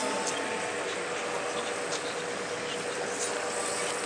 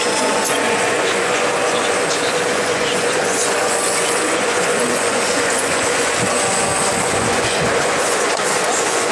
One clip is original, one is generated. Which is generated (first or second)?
second